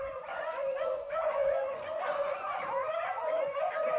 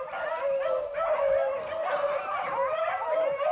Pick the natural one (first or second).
second